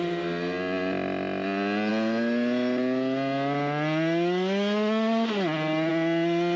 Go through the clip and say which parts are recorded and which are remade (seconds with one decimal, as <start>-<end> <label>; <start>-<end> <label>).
0.0-6.6 recorded